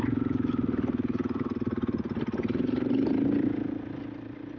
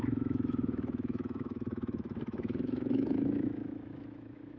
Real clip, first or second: first